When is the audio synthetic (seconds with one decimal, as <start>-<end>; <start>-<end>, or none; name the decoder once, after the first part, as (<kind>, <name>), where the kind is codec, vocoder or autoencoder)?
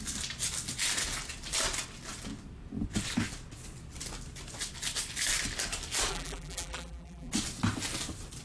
6.1-7.3 (vocoder, BigVGAN v2)